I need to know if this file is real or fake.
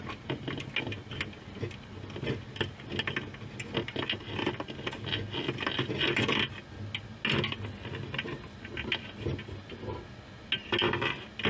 real